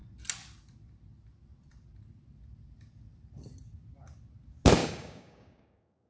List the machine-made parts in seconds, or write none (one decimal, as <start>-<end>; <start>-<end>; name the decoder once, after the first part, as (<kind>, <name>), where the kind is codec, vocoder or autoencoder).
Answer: 4.8-6.1 (codec, DAC)